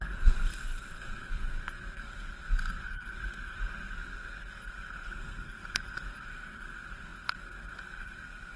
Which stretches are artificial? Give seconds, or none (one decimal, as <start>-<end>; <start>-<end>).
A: 0.0-8.6